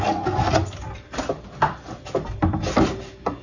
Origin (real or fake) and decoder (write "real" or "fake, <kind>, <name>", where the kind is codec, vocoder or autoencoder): real